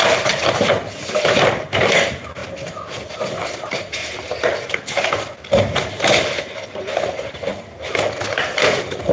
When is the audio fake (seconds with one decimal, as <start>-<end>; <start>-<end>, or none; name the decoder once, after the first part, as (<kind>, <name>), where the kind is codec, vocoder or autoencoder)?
1.1-2.4 (vocoder, BigVGAN v2); 6.9-7.5; 8.3-9.1